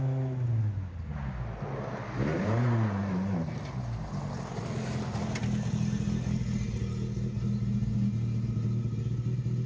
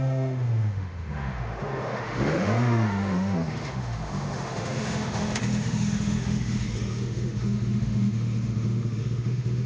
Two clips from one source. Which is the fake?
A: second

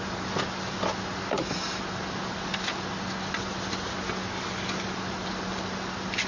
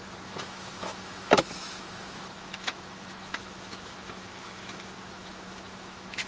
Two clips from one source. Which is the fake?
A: second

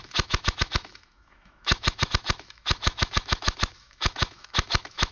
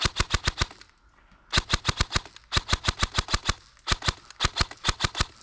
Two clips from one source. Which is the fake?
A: first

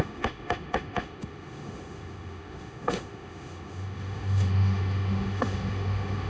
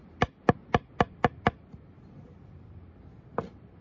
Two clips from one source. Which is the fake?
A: first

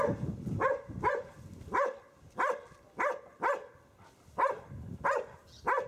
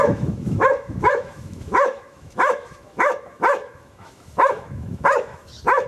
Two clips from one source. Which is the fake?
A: second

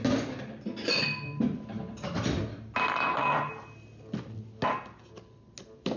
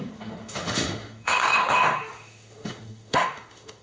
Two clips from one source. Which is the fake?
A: second